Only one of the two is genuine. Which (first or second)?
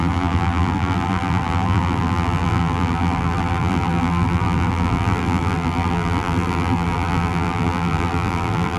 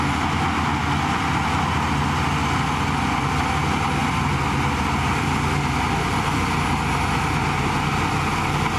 second